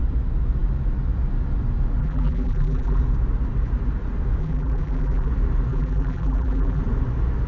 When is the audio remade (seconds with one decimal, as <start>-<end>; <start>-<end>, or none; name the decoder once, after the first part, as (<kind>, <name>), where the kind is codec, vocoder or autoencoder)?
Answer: 2.0-3.0 (vocoder, BigVGAN v2); 4.4-5.3; 5.7-6.8

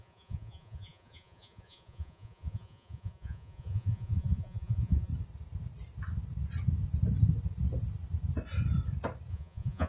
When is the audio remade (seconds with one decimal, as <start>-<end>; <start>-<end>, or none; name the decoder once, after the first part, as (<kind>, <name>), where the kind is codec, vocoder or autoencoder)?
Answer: 0.0-5.1 (vocoder, Vocos); 9.3-9.9